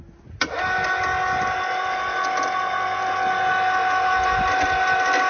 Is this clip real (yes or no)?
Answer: yes